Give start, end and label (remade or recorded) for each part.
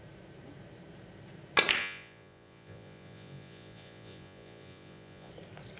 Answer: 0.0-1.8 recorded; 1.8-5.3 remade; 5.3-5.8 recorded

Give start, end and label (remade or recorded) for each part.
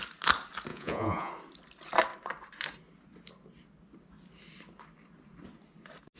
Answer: 0.0-0.7 recorded; 0.7-1.3 remade; 1.3-6.2 recorded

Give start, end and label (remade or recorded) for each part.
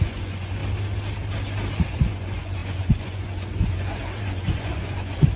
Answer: 0.0-0.6 remade; 0.6-1.8 recorded; 1.8-5.4 remade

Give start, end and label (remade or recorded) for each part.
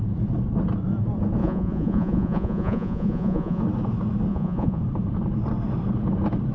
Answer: 0.0-1.4 recorded; 1.4-3.6 remade; 3.6-4.3 recorded; 4.3-4.8 remade; 4.8-6.5 recorded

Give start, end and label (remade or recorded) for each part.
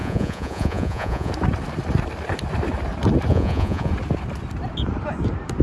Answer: 0.0-1.3 remade; 1.3-3.3 recorded; 3.3-3.9 remade; 3.9-5.6 recorded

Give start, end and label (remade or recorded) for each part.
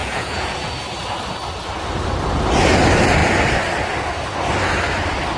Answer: 0.0-0.7 remade; 0.7-5.4 recorded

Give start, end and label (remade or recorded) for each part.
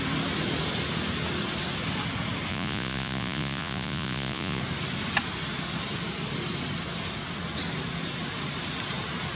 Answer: 0.0-2.5 recorded; 2.5-4.6 remade; 4.6-9.4 recorded